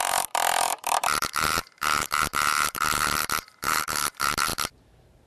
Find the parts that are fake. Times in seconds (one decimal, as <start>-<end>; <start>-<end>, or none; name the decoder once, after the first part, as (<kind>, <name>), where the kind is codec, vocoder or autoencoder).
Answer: 0.0-5.3 (vocoder, BigVGAN v2)